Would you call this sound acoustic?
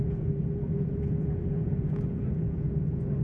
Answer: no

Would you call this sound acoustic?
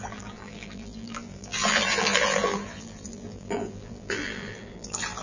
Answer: no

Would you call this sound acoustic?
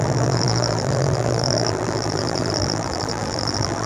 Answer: no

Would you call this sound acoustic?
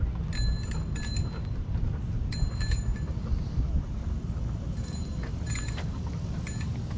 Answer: yes